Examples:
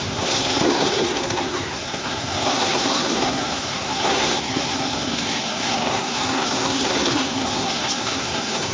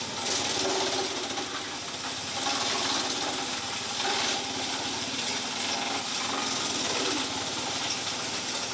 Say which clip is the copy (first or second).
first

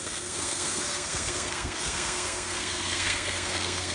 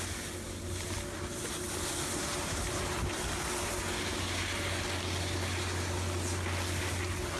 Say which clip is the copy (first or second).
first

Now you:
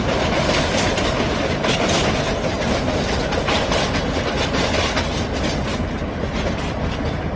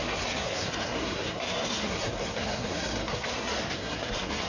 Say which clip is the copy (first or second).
second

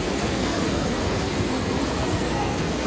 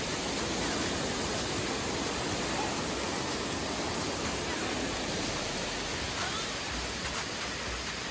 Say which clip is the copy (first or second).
first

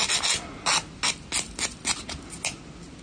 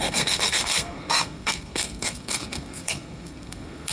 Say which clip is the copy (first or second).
second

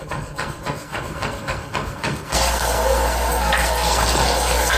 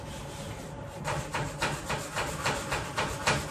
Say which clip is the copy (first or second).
first